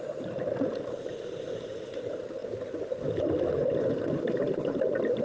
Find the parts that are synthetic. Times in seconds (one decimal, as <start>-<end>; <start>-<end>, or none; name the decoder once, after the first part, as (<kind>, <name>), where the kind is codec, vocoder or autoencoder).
2.4-3.1 (vocoder, BigVGAN v2); 3.6-4.2